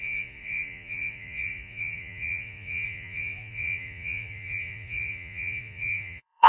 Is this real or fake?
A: fake